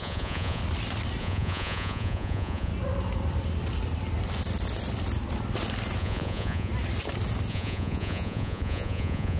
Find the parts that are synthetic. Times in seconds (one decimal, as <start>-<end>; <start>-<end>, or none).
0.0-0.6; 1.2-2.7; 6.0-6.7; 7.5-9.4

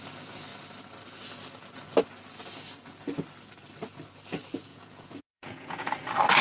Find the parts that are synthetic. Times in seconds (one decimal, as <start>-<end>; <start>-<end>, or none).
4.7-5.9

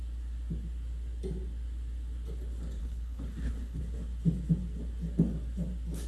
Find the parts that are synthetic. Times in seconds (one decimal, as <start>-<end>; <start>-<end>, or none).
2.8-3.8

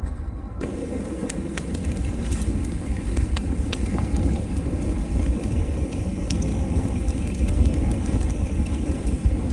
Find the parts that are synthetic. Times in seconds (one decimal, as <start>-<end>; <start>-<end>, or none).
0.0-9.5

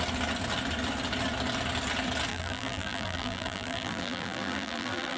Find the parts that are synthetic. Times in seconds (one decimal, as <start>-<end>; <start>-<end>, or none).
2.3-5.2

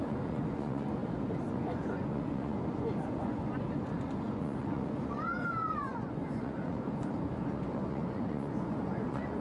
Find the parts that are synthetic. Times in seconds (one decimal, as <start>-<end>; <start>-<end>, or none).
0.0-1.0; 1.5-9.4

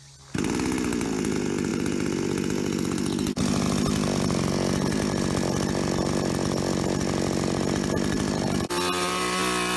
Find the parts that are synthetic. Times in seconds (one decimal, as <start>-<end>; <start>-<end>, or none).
none